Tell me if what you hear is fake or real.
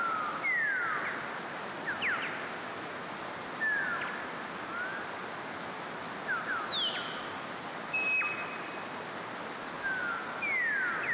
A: real